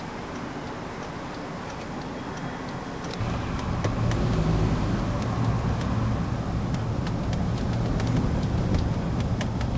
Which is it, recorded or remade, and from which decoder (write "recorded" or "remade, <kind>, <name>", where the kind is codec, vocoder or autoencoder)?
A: recorded